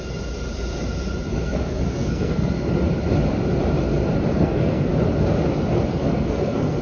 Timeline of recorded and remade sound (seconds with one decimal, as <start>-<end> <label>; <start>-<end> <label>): 0.0-1.3 recorded; 1.3-2.5 remade; 2.5-4.3 recorded; 4.3-4.9 remade; 4.9-5.9 recorded; 5.9-6.8 remade